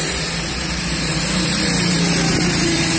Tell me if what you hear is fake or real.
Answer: fake